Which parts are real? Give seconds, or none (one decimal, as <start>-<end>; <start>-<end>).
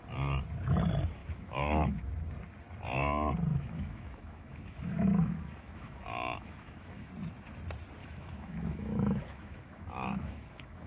0.0-1.2; 2.0-3.5; 7.1-8.0